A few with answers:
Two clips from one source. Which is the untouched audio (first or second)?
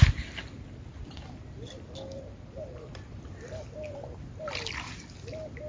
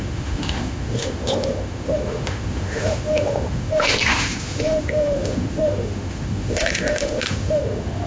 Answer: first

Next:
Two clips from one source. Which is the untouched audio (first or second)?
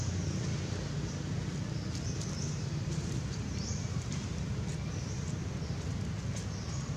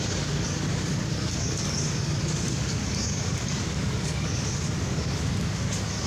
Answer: first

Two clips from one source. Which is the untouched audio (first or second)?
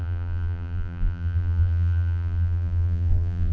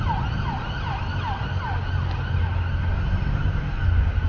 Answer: second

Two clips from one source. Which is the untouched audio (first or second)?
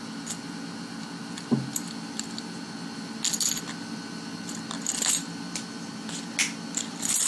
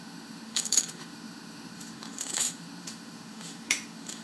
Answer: first